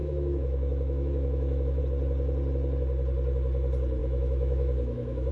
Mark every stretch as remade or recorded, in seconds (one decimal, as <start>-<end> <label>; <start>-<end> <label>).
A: 0.0-1.8 remade; 1.8-4.0 recorded; 4.0-5.3 remade